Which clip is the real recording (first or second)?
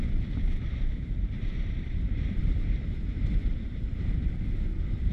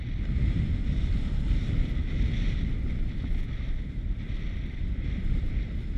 second